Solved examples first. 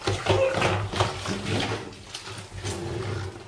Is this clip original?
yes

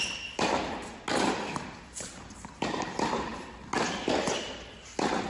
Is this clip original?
yes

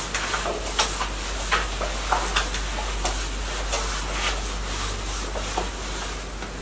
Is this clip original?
yes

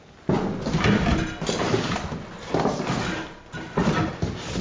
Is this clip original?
yes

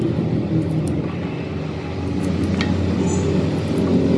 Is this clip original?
yes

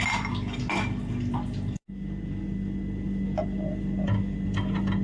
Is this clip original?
yes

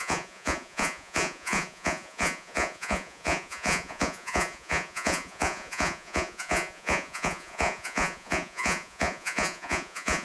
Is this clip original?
no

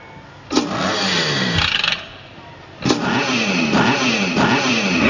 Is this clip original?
yes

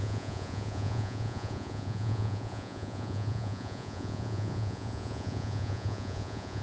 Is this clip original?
no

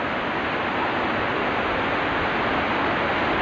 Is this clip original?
yes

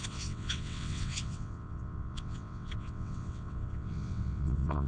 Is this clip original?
no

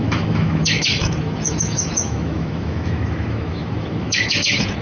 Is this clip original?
no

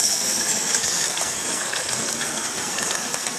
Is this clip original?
no